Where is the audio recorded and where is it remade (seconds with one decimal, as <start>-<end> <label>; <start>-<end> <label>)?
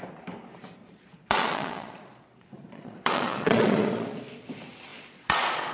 0.0-0.8 recorded; 0.8-4.2 remade; 4.2-4.9 recorded; 4.9-5.7 remade